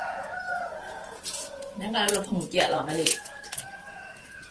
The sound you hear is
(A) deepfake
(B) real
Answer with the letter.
A